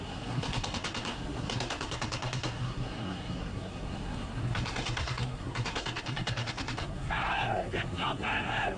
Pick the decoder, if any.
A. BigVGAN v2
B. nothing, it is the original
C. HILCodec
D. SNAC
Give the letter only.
D